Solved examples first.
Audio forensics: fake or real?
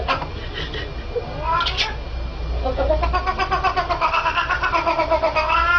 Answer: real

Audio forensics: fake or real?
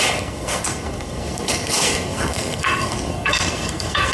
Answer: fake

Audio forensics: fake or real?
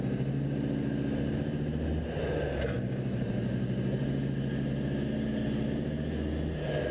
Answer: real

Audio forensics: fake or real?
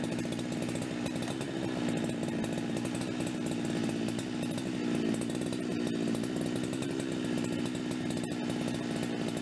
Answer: real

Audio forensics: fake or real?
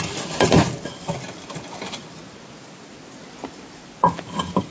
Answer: real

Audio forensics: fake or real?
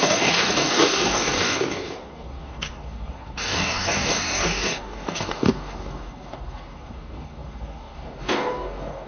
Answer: fake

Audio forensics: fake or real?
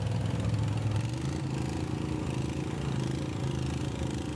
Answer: real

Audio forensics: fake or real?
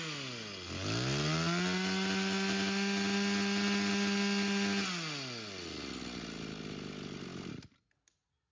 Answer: real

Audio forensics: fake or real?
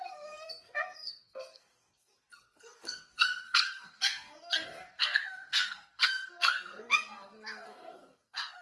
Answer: fake